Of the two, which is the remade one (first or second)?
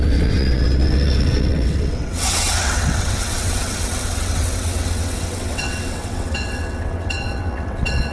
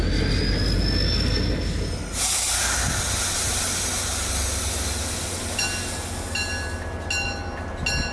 first